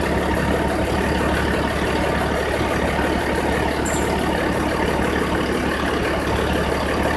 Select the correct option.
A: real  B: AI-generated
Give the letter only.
A